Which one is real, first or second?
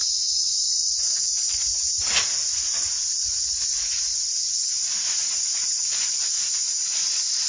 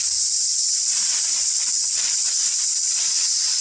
first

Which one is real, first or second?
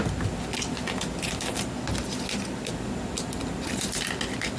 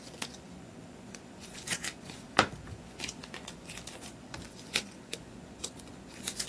first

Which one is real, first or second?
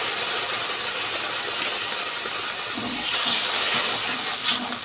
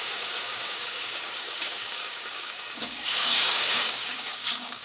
first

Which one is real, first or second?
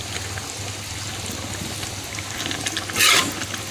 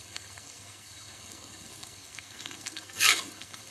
first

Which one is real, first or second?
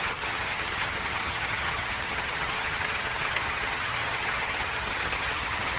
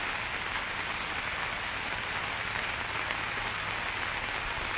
second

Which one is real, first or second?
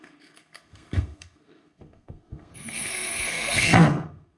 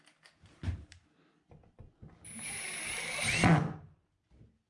second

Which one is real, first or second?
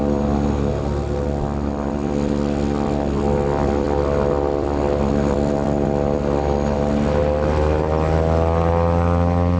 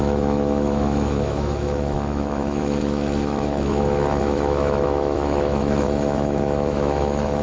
first